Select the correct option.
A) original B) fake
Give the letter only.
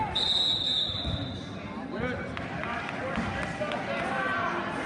A